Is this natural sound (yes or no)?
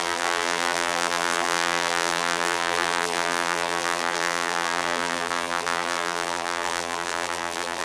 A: no